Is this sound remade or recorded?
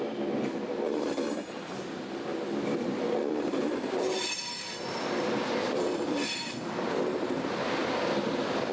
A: recorded